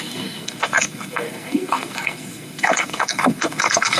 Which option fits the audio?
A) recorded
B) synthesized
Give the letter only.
B